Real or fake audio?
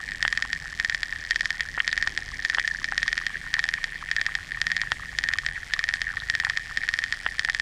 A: fake